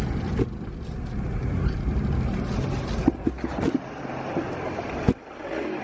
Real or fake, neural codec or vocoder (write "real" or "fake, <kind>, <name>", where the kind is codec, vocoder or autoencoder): real